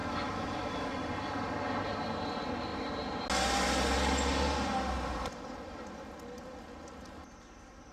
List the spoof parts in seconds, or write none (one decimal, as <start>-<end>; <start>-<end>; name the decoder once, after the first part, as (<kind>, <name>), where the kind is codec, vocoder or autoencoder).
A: 0.0-0.9 (autoencoder, DAC-VAE)